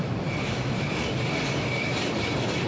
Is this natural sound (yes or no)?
yes